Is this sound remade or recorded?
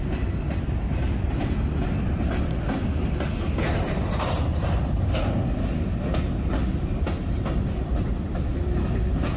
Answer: recorded